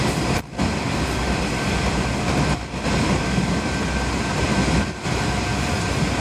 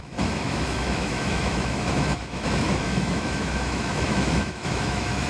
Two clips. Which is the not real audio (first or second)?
second